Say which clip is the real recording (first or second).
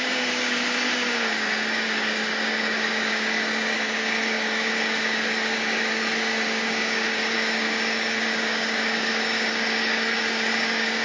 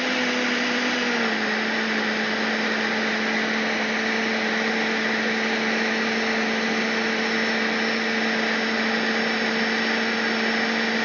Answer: second